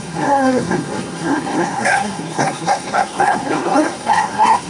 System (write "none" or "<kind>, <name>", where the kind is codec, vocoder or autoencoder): codec, SNAC